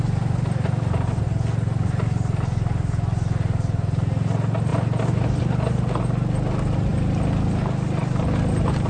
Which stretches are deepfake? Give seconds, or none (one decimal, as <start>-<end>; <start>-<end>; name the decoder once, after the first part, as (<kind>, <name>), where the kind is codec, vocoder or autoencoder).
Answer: none